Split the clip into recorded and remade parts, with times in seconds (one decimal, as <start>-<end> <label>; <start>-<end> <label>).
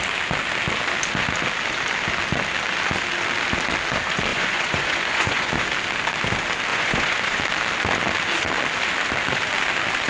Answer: 0.0-4.3 recorded; 4.3-5.5 remade; 5.5-6.7 recorded; 6.7-7.4 remade; 7.4-10.1 recorded